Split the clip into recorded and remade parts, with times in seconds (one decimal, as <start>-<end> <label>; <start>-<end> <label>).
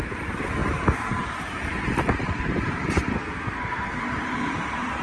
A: 0.0-3.1 recorded; 3.1-4.0 remade; 4.0-5.0 recorded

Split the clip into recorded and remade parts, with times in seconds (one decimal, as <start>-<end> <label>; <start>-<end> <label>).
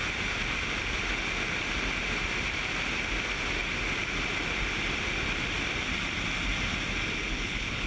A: 0.0-7.2 recorded; 7.2-7.9 remade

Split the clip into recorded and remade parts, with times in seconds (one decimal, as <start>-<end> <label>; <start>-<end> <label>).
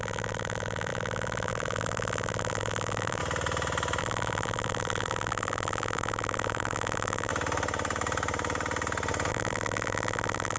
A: 0.0-3.2 remade; 3.2-4.0 recorded; 4.0-7.3 remade; 7.3-9.3 recorded; 9.3-10.6 remade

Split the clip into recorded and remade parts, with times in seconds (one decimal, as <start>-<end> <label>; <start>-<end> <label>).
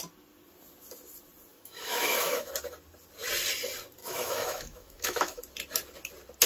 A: 0.0-1.5 recorded; 1.5-2.5 remade; 2.5-4.0 recorded; 4.0-5.4 remade; 5.4-6.5 recorded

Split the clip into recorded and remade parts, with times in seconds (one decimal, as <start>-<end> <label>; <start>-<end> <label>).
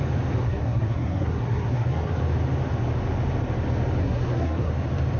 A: 0.0-0.4 recorded; 0.4-2.2 remade; 2.2-4.0 recorded; 4.0-4.7 remade; 4.7-5.2 recorded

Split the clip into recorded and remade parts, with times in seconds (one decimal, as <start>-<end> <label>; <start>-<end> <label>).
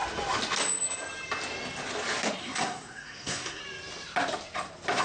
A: 0.0-2.4 recorded; 2.4-3.6 remade; 3.6-5.0 recorded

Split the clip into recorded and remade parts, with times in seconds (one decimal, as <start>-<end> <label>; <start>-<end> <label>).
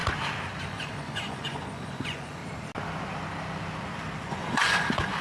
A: 0.0-0.7 recorded; 0.7-2.4 remade; 2.4-4.2 recorded; 4.2-5.2 remade